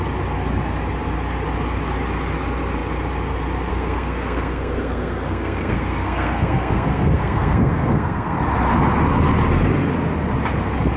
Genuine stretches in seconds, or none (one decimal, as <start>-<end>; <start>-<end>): 0.0-3.7; 8.4-11.0